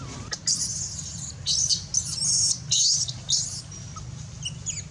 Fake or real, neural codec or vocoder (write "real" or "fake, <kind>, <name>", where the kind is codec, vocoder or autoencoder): real